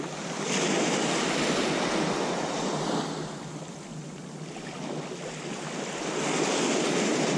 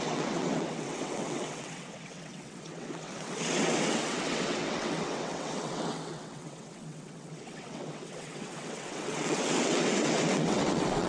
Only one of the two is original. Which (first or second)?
first